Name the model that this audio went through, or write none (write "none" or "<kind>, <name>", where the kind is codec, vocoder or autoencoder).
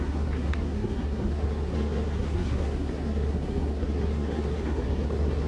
codec, SNAC